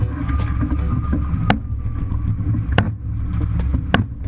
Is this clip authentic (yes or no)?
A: yes